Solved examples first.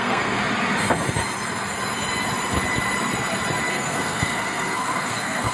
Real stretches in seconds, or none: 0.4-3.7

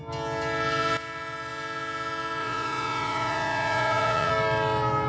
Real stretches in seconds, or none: 0.0-2.4; 4.3-5.1

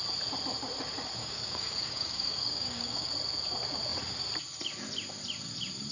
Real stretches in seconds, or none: 0.0-1.2; 3.1-5.9

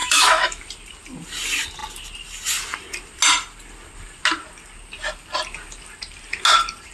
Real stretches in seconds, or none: 0.6-6.9

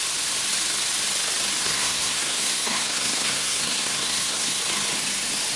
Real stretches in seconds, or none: 0.0-1.6; 4.6-5.6

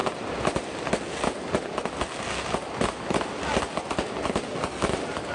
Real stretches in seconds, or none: 0.0-5.3

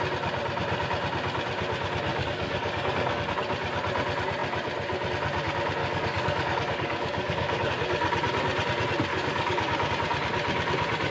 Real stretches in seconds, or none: 0.0-2.1; 3.3-5.8; 7.7-9.1; 9.9-11.1